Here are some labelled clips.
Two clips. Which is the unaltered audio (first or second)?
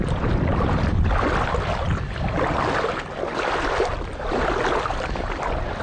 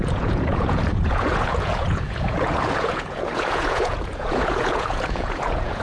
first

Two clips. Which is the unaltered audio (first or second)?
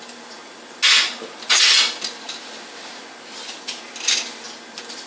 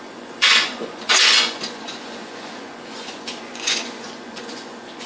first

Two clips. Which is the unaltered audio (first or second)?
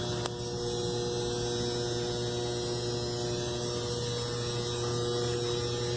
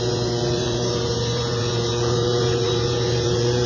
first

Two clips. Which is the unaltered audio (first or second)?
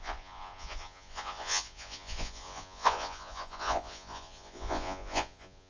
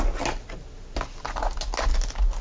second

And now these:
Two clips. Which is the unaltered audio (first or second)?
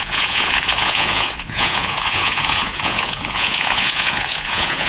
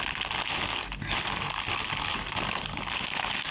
second